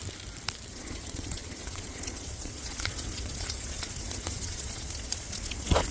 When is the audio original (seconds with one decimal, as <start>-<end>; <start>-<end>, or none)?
0.0-0.7